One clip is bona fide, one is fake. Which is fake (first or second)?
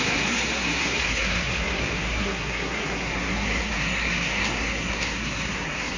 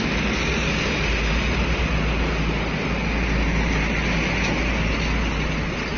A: first